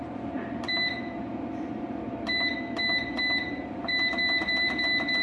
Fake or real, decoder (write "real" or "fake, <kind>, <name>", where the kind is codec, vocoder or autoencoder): fake, vocoder, BigVGAN v2